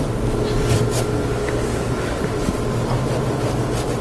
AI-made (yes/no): no